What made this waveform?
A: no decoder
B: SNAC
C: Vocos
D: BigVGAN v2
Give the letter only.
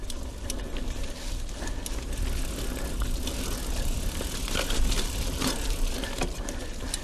A